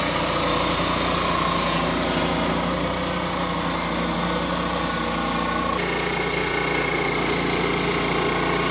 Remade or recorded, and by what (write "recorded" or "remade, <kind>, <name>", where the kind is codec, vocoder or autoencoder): recorded